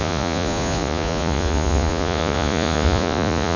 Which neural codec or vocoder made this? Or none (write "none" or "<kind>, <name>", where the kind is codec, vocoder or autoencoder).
vocoder, Vocos